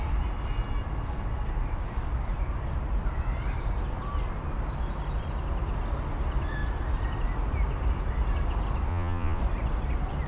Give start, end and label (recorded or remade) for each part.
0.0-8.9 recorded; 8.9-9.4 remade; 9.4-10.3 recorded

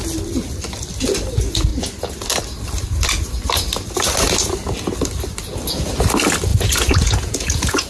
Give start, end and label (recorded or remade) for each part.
0.0-6.5 recorded; 6.5-7.9 remade

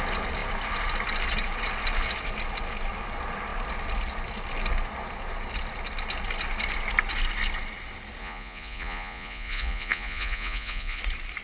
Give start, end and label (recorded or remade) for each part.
0.0-8.2 recorded; 8.2-11.0 remade; 11.0-11.4 recorded

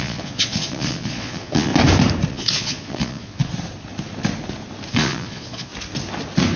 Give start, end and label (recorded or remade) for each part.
0.0-1.7 remade; 1.7-2.3 recorded; 2.3-3.5 remade; 3.5-4.9 recorded; 4.9-5.7 remade; 5.7-6.6 recorded

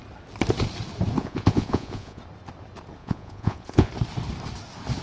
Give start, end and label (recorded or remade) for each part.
0.0-1.2 recorded; 1.2-2.2 remade; 2.2-3.0 recorded; 3.0-3.9 remade; 3.9-5.0 recorded

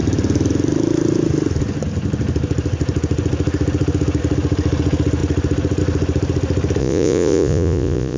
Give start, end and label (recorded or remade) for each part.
0.0-6.8 recorded; 6.8-8.2 remade

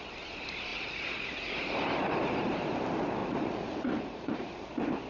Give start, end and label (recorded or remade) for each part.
0.0-0.7 recorded; 0.7-1.7 remade; 1.7-3.2 recorded; 3.2-4.5 remade; 4.5-5.1 recorded